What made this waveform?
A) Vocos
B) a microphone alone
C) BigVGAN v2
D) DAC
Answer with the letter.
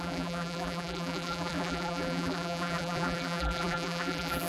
C